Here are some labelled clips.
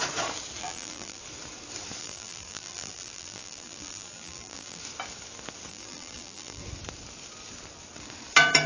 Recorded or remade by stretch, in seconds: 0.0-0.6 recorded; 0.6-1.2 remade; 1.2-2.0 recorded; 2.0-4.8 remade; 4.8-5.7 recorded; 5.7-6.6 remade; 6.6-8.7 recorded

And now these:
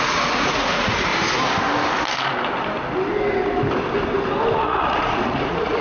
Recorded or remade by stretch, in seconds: 0.0-1.1 remade; 1.1-4.6 recorded; 4.6-5.8 remade

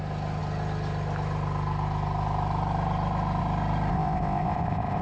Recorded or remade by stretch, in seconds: 0.0-3.9 recorded; 3.9-5.0 remade